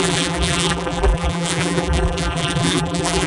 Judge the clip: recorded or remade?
remade